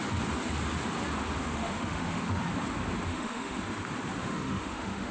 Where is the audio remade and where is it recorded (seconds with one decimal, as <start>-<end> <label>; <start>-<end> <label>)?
0.0-1.4 recorded; 1.4-2.4 remade; 2.4-3.1 recorded; 3.1-3.6 remade; 3.6-4.2 recorded; 4.2-5.1 remade

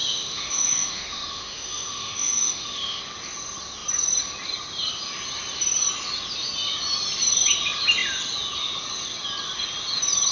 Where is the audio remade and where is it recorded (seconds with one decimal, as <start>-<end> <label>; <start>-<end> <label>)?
0.0-3.0 remade; 3.0-10.3 recorded

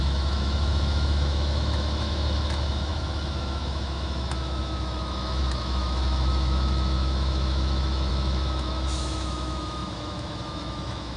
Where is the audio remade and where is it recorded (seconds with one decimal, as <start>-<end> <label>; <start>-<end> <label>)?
0.0-11.2 remade

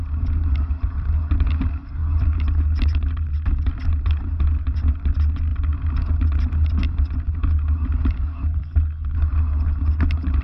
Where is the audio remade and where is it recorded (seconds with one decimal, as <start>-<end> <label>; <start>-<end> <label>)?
0.0-10.4 recorded

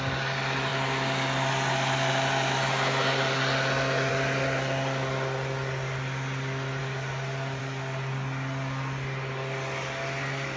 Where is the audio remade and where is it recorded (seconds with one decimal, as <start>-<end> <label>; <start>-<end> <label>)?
0.0-10.6 recorded

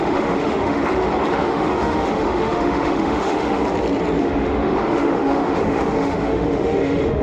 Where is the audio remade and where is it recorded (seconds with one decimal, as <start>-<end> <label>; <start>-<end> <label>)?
0.0-0.8 remade; 0.8-1.3 recorded; 1.3-3.6 remade; 3.6-4.2 recorded; 4.2-7.2 remade

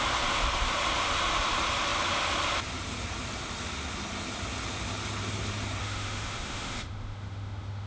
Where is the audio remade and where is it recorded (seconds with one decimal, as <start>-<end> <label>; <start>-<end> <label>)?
0.0-5.8 recorded; 5.8-7.9 remade

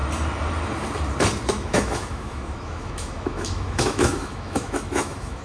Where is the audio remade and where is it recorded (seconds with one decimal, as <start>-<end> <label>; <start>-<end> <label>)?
0.0-1.5 recorded; 1.5-5.4 remade